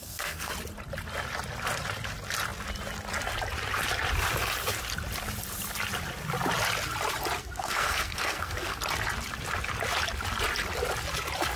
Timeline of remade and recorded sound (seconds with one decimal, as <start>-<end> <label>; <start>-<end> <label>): 0.0-0.5 remade; 0.5-7.4 recorded; 7.4-8.8 remade; 8.8-11.6 recorded